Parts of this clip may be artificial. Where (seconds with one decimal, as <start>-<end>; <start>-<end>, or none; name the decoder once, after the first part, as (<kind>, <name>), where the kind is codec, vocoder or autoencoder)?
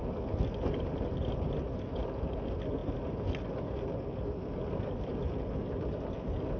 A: none